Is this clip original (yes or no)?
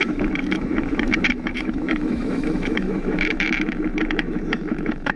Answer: no